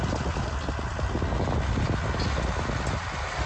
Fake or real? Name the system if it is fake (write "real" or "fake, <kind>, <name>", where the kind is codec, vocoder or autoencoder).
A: real